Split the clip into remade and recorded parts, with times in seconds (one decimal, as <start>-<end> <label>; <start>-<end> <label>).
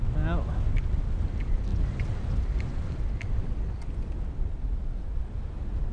0.0-5.9 recorded